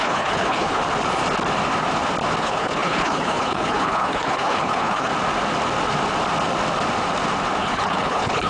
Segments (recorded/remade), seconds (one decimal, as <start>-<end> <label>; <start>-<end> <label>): 0.0-0.8 remade; 0.8-2.4 recorded; 2.4-5.1 remade; 5.1-7.6 recorded; 7.6-8.5 remade